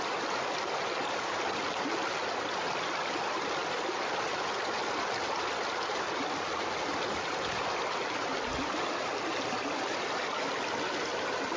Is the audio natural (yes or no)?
yes